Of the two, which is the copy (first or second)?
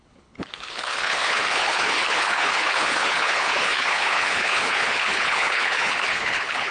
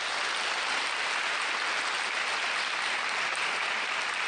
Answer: first